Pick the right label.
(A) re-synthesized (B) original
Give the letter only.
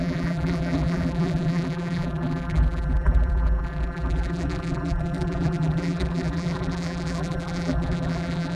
A